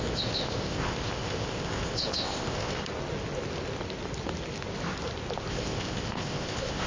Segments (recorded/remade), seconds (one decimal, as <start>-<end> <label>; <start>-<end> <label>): 0.0-2.8 remade; 2.8-5.5 recorded; 5.5-6.9 remade